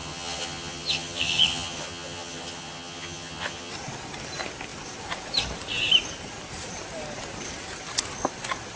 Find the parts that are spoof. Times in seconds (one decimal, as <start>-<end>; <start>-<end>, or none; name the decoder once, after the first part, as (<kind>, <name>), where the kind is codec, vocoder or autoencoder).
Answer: 0.0-3.7 (vocoder, HiFi-GAN)